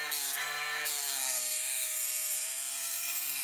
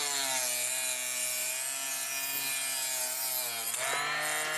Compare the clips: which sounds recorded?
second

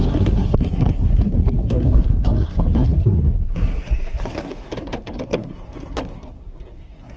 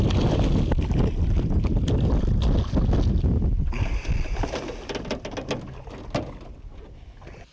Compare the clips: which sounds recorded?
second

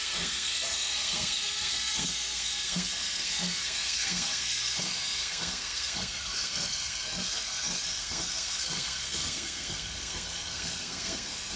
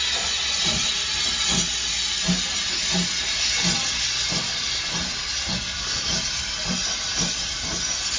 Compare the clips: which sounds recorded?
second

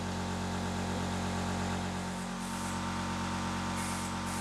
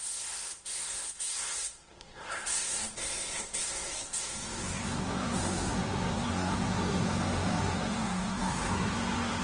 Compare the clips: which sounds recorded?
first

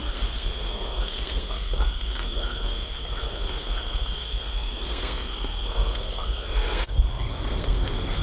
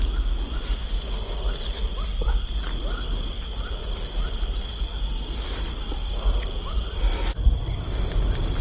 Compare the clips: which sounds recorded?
second